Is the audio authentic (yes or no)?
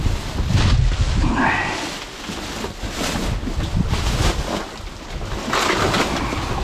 yes